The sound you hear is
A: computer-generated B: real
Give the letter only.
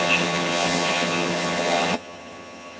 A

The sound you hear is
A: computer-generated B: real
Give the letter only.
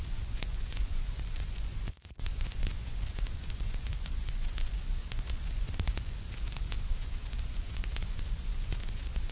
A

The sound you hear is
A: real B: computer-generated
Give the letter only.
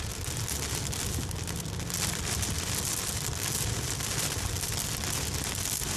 A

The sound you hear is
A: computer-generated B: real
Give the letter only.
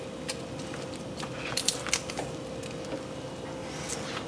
B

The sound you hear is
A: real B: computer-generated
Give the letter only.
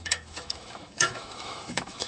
B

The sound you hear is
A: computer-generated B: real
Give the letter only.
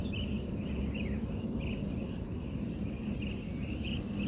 B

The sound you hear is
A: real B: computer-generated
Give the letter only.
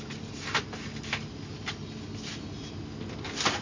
A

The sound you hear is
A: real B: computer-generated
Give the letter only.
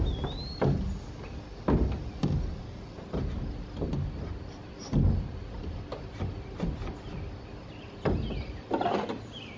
A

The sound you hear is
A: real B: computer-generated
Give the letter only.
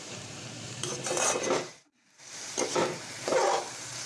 B